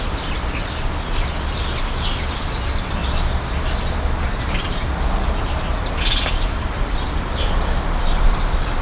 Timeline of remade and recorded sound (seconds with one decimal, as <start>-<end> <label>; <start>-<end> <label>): 0.0-8.8 recorded